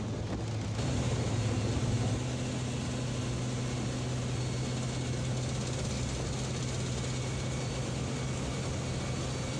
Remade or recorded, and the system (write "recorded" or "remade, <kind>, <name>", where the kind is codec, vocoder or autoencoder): recorded